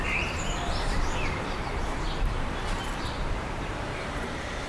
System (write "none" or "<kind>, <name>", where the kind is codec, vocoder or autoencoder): vocoder, BigVGAN v2